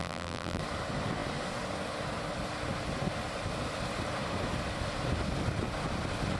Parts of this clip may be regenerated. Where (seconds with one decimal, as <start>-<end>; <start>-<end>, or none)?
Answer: 0.0-0.6